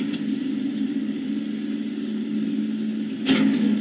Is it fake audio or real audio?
real